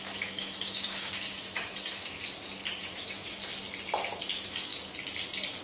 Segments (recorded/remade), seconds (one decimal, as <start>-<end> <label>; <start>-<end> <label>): 0.0-2.2 remade; 2.2-2.8 recorded; 2.8-3.4 remade; 3.4-4.2 recorded; 4.2-4.7 remade; 4.7-5.6 recorded